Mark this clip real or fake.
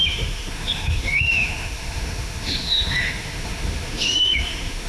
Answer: fake